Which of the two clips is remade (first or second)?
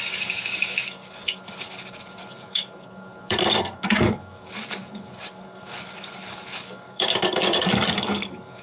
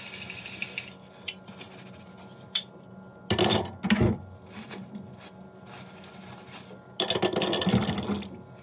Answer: first